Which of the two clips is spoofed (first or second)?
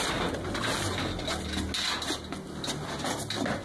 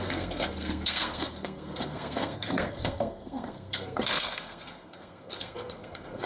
second